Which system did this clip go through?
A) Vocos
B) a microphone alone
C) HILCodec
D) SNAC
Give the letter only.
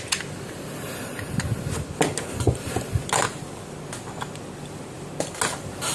B